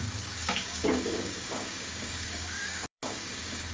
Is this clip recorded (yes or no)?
no